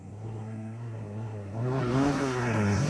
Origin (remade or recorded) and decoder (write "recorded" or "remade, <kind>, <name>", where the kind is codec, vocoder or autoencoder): remade, codec, SNAC